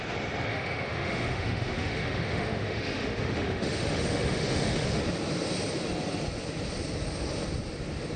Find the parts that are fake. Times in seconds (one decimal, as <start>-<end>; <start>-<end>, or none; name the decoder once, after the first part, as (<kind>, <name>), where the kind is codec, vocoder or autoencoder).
0.5-5.0 (autoencoder, DAC-VAE)